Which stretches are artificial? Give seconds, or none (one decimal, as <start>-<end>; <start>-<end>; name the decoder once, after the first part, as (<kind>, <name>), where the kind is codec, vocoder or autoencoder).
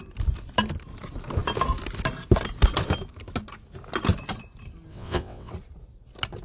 4.9-5.5 (vocoder, WaveNeXt)